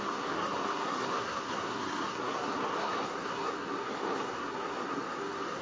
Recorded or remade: remade